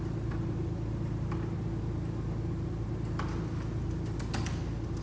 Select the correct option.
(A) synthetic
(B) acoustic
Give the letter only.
B